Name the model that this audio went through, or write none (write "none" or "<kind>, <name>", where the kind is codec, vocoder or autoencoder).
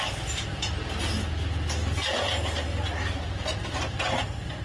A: none